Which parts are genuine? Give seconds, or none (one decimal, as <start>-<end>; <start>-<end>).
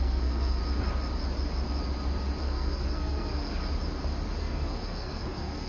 0.6-2.4; 3.6-4.4